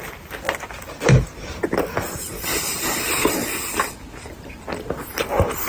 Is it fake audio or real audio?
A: real